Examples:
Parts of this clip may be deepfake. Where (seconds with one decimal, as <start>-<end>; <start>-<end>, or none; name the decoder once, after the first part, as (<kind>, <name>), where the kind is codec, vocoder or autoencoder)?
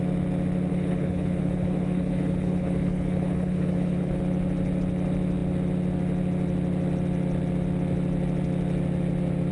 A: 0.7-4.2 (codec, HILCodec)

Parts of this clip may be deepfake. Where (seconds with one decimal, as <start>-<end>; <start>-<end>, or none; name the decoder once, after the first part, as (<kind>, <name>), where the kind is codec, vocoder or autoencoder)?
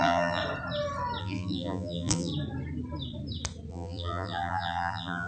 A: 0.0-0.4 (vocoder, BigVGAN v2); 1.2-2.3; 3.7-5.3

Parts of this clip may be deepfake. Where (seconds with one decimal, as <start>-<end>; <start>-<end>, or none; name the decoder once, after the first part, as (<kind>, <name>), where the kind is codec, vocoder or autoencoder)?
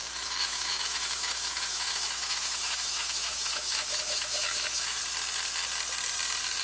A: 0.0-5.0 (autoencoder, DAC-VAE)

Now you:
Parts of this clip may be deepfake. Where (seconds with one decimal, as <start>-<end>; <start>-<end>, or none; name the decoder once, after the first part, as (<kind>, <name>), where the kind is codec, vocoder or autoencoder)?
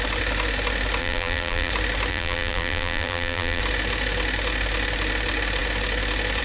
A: 1.0-1.7 (vocoder, BigVGAN v2); 2.1-3.6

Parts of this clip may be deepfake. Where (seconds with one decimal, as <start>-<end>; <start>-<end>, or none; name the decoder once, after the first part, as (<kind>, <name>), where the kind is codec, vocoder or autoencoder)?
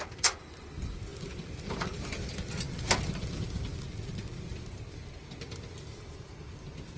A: none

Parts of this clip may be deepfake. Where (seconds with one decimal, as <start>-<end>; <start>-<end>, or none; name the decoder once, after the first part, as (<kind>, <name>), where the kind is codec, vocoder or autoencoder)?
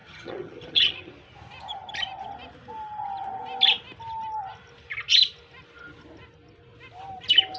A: 0.0-1.1 (vocoder, HiFi-GAN)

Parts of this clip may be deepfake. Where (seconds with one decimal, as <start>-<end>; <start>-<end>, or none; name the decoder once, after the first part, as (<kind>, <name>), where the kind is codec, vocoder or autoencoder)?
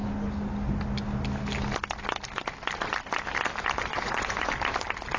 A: 3.9-4.5 (vocoder, Vocos)